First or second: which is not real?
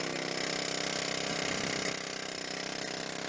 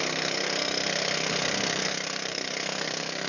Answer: second